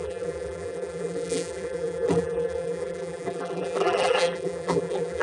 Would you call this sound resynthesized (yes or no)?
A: yes